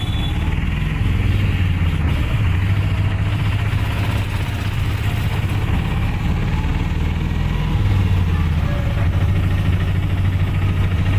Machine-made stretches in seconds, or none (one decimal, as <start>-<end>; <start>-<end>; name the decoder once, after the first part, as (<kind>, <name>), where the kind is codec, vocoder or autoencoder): none